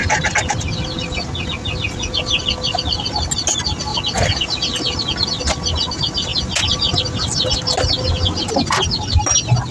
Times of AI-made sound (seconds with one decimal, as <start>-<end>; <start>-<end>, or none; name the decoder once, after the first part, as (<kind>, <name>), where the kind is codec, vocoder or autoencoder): none